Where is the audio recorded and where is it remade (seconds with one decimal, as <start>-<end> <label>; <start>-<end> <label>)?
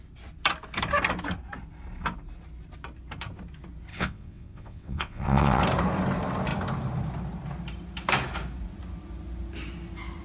0.0-3.9 recorded; 3.9-5.6 remade; 5.6-10.2 recorded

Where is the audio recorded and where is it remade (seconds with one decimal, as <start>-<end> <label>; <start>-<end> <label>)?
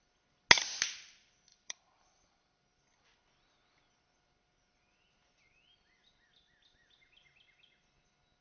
0.0-1.5 recorded; 1.5-2.8 remade; 2.8-8.4 recorded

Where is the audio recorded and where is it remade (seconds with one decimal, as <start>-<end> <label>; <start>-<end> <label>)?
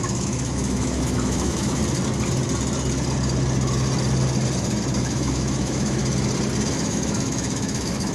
0.0-1.8 remade; 1.8-5.0 recorded; 5.0-6.0 remade; 6.0-6.7 recorded; 6.7-8.1 remade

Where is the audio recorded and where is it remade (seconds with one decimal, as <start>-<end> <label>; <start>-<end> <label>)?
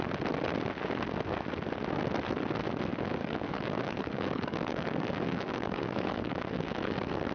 0.0-2.9 recorded; 2.9-7.3 remade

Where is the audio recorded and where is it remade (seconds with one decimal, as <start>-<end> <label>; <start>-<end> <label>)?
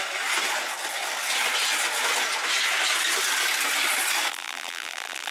0.0-4.3 recorded; 4.3-5.3 remade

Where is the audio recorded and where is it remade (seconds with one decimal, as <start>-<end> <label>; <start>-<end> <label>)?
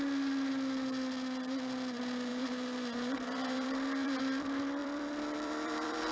0.0-2.3 recorded; 2.3-4.2 remade; 4.2-4.8 recorded; 4.8-6.1 remade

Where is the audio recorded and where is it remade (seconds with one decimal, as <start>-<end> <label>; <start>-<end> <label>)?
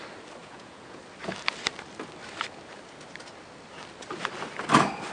0.0-0.4 recorded; 0.4-1.0 remade; 1.0-5.1 recorded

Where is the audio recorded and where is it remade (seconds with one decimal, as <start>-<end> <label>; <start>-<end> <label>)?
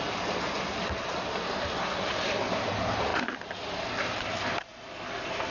0.0-5.5 recorded